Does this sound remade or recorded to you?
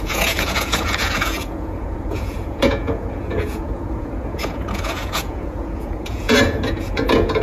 remade